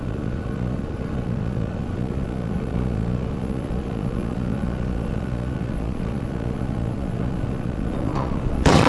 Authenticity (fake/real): fake